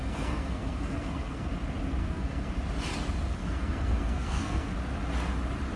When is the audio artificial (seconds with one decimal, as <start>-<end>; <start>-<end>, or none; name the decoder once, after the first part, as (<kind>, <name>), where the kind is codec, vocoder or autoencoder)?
0.0-1.5 (codec, SNAC); 2.0-2.5; 3.4-4.7